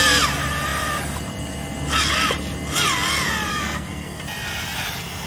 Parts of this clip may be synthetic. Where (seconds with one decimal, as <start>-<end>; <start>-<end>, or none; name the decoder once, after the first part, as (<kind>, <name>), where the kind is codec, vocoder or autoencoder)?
3.5-4.2 (codec, SNAC)